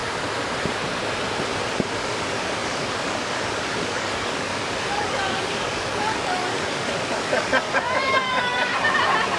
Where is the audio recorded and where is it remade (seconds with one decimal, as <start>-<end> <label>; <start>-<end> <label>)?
0.0-2.0 recorded; 2.0-8.7 remade; 8.7-9.4 recorded